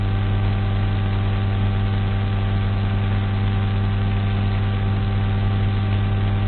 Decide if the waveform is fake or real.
real